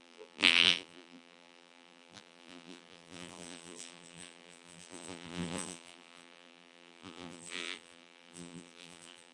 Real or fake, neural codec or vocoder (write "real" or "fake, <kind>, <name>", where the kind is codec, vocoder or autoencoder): fake, vocoder, BigVGAN v2